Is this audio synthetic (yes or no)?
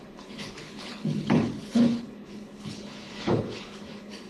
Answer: yes